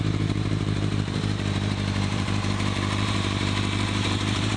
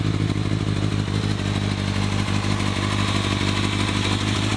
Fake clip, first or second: first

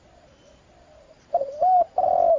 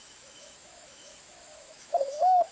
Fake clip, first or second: second